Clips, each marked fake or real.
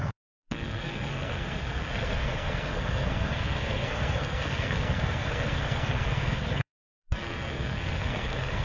fake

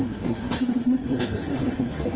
fake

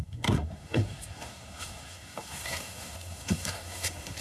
fake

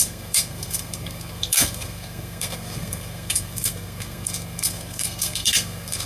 fake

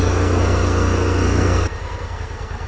fake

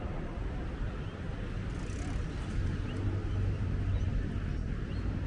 real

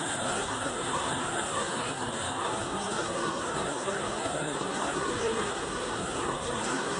fake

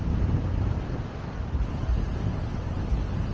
real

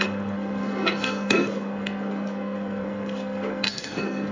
fake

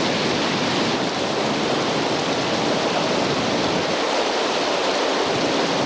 real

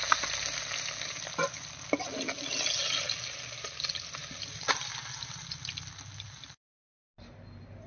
real